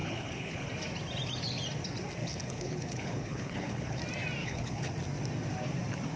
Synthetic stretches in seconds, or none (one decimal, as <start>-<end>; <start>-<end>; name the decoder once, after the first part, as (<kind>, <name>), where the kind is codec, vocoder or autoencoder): 0.0-0.7 (codec, HILCodec); 2.2-4.0; 4.4-4.9